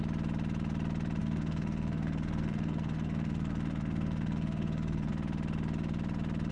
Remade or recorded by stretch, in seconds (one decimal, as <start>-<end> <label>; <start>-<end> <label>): 0.0-1.2 recorded; 1.2-5.1 remade; 5.1-6.5 recorded